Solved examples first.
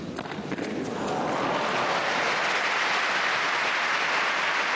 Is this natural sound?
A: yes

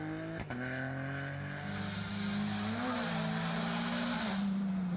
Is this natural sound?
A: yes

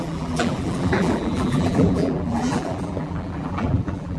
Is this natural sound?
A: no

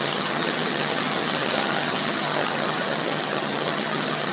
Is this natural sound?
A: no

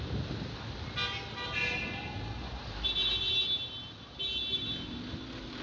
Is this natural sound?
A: yes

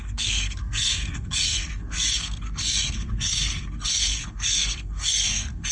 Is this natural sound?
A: no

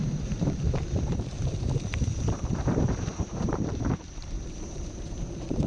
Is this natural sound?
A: no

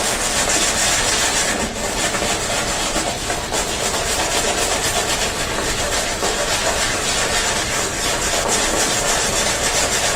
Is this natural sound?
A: yes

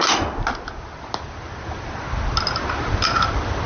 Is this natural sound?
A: yes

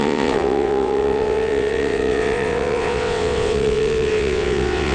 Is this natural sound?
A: no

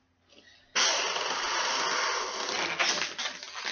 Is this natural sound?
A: yes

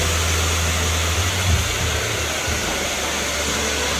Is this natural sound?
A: yes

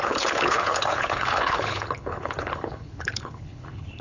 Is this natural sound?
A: no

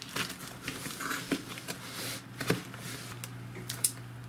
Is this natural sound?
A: yes